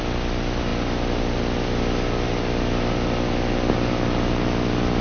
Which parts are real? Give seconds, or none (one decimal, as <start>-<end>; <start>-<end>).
0.0-5.0